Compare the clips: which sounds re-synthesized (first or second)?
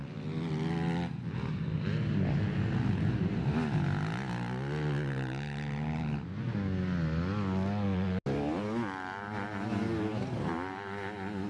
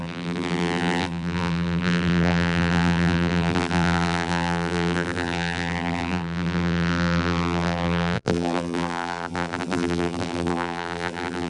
second